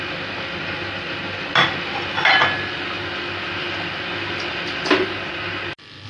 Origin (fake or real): real